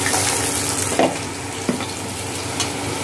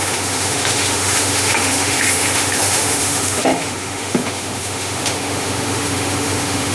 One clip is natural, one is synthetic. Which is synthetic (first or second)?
second